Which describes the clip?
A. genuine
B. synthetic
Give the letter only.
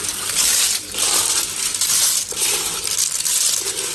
A